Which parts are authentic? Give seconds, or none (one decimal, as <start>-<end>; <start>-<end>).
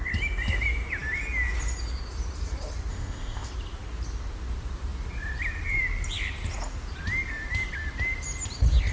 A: 0.0-2.9; 3.5-8.9